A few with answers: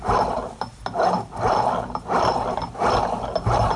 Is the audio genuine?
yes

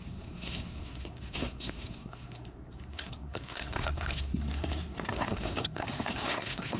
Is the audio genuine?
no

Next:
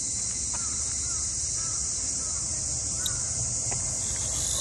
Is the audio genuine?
yes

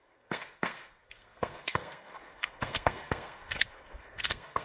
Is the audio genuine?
no